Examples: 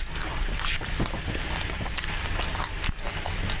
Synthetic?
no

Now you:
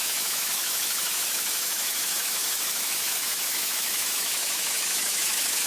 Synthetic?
yes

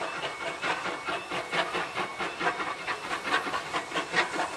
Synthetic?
no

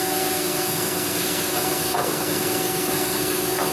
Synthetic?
yes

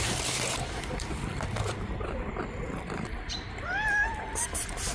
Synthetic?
yes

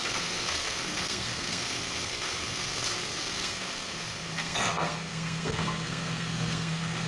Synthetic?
yes